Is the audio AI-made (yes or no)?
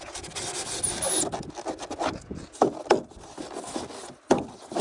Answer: no